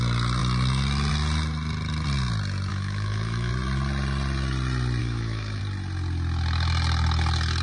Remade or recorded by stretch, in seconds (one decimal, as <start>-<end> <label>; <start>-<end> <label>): 0.0-2.7 recorded; 2.7-3.5 remade; 3.5-5.0 recorded; 5.0-5.6 remade; 5.6-7.6 recorded